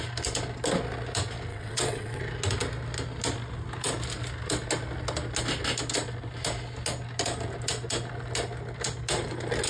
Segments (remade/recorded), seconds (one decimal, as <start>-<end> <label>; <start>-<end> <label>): 0.0-1.5 recorded; 1.5-2.2 remade; 2.2-9.7 recorded